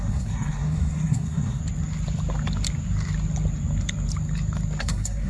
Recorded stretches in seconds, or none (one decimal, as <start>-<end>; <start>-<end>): 1.6-4.8